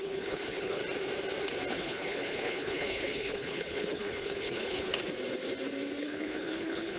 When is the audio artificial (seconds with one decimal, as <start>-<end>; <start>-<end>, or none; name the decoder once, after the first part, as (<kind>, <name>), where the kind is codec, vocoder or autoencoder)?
0.0-0.8 (codec, HILCodec); 1.7-4.9; 6.0-7.0